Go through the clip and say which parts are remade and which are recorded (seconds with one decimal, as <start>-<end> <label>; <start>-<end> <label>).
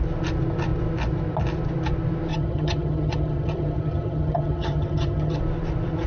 0.0-2.3 recorded; 2.3-5.4 remade; 5.4-6.1 recorded